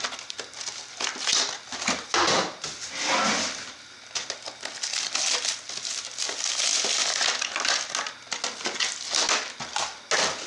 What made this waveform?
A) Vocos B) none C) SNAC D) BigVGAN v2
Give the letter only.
B